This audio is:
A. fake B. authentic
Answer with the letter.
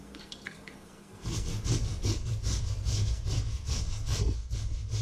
A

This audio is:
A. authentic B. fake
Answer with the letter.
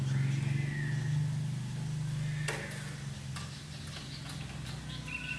A